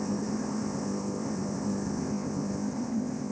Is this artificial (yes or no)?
yes